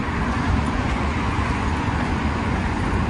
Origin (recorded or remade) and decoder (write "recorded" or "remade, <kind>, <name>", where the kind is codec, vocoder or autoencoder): remade, vocoder, Vocos